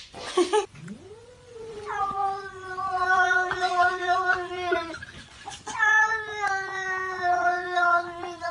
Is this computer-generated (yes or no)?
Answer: yes